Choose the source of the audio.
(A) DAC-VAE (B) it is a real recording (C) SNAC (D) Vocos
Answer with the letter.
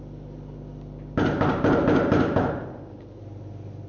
B